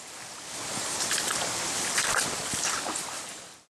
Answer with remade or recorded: recorded